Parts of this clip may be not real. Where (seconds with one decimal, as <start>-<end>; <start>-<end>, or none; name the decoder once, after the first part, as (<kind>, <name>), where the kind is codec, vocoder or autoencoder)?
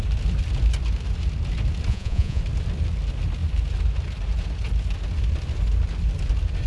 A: 1.9-2.4 (vocoder, Vocos)